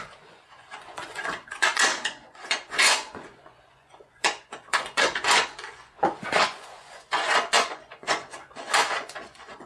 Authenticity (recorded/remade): remade